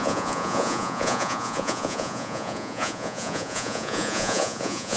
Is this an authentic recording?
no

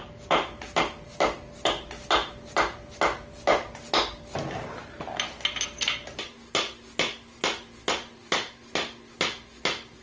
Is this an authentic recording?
yes